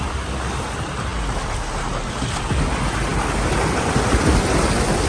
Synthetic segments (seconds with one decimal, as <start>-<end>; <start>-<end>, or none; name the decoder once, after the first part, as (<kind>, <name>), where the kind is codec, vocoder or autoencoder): none